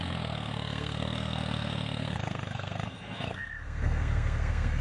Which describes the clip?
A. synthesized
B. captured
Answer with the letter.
A